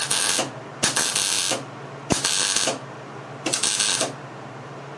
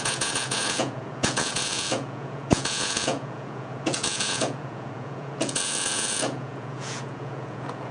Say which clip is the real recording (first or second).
first